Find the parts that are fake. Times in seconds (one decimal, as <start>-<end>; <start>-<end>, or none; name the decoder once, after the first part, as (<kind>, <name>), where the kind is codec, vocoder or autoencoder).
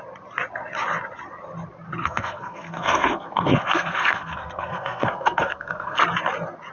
2.0-6.0 (codec, SNAC)